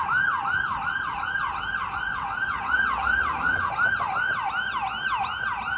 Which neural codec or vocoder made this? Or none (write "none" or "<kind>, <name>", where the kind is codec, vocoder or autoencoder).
none